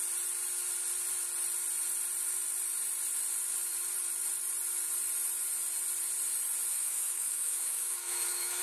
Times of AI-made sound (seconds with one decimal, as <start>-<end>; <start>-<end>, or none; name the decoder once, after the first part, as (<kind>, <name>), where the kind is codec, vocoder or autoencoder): 6.7-8.6 (autoencoder, DAC-VAE)